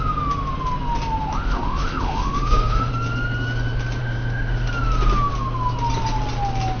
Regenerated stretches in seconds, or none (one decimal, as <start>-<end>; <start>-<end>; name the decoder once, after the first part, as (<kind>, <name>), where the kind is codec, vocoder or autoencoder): 1.3-2.9 (autoencoder, DAC-VAE); 4.0-4.7